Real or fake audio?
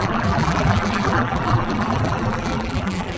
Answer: fake